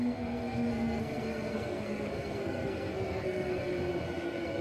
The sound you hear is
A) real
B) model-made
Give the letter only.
B